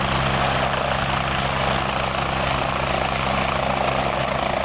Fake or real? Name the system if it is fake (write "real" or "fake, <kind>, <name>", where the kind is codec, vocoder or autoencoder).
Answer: real